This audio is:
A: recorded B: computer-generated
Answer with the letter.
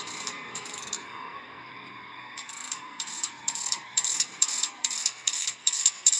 B